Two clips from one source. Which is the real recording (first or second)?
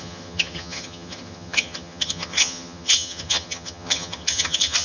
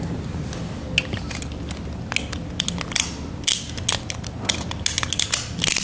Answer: second